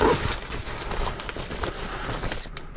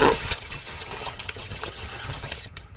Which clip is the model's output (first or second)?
second